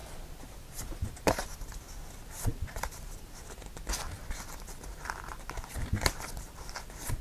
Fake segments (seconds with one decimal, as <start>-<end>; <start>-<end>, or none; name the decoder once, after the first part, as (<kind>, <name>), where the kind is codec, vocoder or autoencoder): 0.0-1.8 (vocoder, BigVGAN v2)

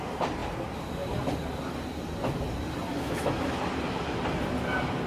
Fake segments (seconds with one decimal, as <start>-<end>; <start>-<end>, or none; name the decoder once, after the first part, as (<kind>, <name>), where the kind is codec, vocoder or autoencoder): 2.9-3.6 (autoencoder, DAC-VAE)

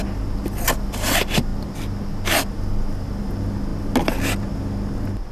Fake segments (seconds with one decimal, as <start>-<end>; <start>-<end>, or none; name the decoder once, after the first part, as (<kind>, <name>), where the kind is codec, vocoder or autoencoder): none

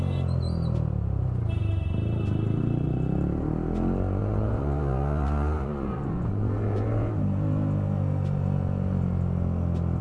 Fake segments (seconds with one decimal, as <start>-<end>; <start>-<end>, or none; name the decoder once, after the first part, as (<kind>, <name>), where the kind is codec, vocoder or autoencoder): 4.2-7.1 (vocoder, Vocos)

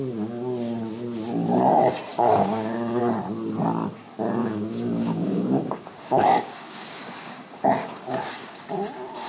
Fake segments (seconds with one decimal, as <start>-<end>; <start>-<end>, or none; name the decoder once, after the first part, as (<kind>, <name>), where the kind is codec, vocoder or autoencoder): 2.1-3.0 (codec, DAC); 4.4-8.6

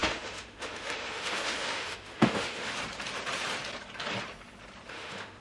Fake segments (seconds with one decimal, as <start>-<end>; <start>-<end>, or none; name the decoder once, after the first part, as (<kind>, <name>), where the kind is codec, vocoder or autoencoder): 0.0-2.7 (autoencoder, DAC-VAE); 4.9-5.4